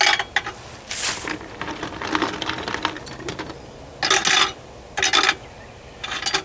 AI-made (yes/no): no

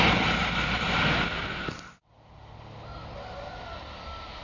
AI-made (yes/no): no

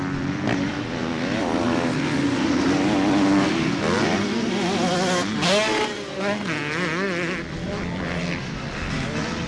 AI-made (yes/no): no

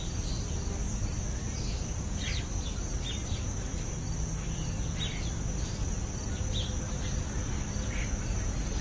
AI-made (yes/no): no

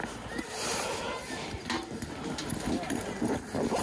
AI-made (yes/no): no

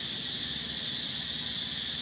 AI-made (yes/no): no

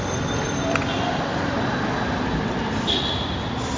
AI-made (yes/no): yes